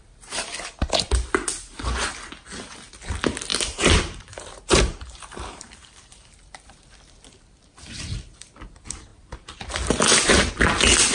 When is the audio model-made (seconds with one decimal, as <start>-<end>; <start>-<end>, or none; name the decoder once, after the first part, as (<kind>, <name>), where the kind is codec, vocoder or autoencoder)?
3.5-6.9 (vocoder, BigVGAN v2)